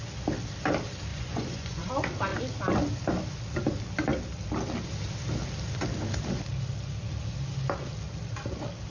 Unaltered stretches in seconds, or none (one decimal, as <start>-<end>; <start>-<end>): 0.0-1.1; 1.9-8.9

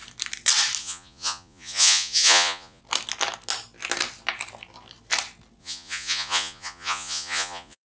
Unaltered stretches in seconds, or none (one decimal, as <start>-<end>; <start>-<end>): 0.0-0.8; 2.8-5.6

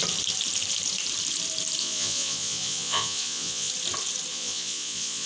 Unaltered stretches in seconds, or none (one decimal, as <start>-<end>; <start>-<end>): 0.0-1.8; 3.7-4.3

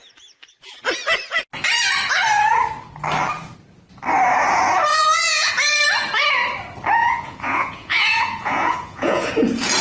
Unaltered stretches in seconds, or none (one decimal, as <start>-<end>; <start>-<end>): 0.0-4.9; 5.5-7.0; 9.3-9.8

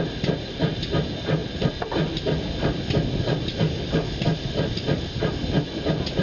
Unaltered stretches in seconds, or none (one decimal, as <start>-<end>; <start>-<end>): 0.0-6.2

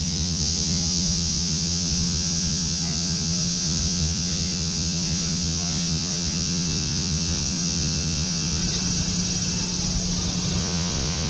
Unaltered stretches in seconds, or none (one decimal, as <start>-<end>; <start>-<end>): 8.6-10.6

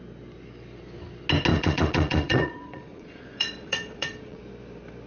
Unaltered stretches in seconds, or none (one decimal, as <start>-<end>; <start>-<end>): 0.0-1.5; 4.4-5.1